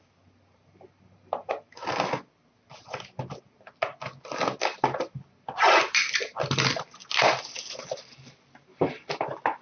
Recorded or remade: recorded